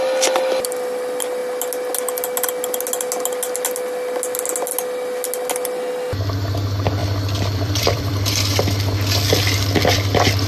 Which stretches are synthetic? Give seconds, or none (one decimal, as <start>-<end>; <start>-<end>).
7.0-8.3